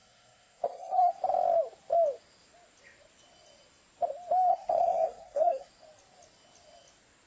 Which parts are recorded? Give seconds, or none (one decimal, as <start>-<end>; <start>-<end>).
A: 1.1-4.5; 5.7-7.3